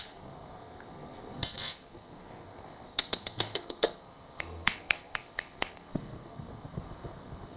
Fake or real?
fake